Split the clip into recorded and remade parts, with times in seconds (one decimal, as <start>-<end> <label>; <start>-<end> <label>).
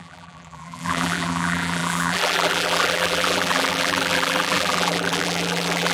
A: 0.0-5.9 remade